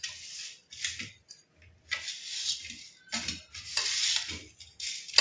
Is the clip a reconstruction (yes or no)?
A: no